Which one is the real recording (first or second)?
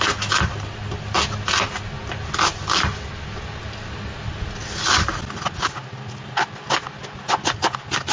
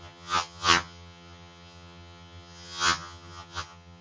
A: first